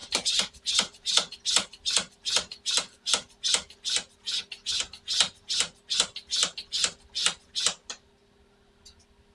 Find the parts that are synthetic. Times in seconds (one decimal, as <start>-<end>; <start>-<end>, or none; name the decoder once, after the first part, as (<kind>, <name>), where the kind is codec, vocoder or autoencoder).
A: 0.0-3.1 (vocoder, BigVGAN v2)